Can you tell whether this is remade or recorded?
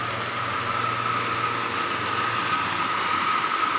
recorded